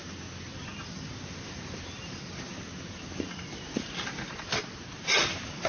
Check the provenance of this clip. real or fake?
real